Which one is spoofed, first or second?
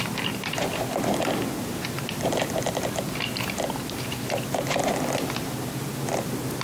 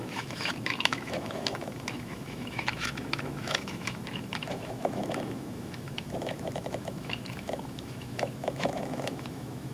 second